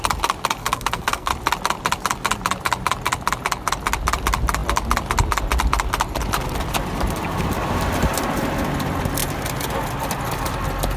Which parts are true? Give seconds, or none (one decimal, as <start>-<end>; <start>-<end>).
0.0-0.6; 1.3-11.0